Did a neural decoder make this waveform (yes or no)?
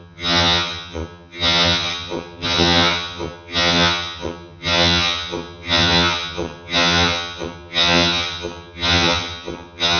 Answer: yes